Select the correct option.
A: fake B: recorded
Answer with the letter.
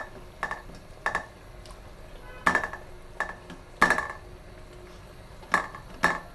B